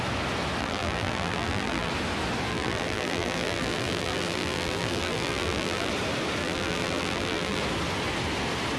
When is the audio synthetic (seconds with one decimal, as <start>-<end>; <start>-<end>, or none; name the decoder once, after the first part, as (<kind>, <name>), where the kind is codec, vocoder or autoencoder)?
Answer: 0.6-1.9 (vocoder, BigVGAN v2); 2.5-5.9; 6.4-7.6